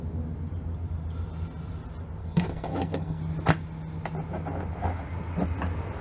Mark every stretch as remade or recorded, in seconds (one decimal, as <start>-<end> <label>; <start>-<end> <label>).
0.0-2.2 recorded; 2.2-3.2 remade; 3.2-6.0 recorded